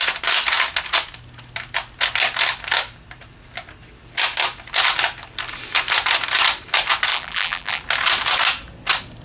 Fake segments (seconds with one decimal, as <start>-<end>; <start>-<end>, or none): 7.1-7.8